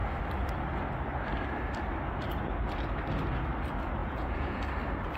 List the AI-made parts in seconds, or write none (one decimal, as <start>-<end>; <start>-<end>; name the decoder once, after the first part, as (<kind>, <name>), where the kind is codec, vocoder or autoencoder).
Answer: 4.0-4.6 (vocoder, Vocos)